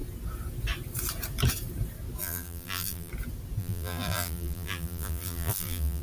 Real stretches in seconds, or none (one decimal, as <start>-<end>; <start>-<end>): 0.0-2.2; 3.1-3.6